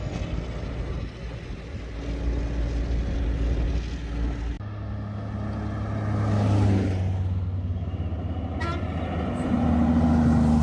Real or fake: real